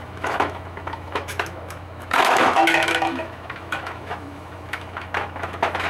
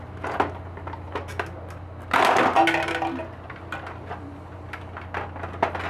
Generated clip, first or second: first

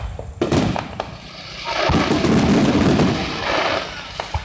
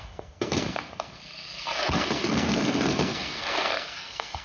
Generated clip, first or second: second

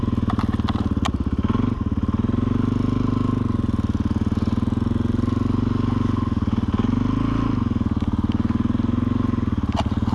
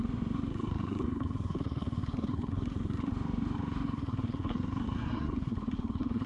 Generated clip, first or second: second